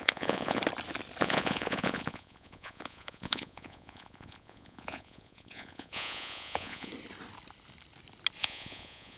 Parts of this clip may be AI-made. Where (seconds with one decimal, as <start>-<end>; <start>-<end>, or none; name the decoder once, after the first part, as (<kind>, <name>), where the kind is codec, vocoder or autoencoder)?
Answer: 0.0-0.6 (vocoder, Vocos); 1.2-6.9; 8.4-9.2